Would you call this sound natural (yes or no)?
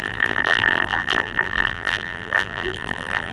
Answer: no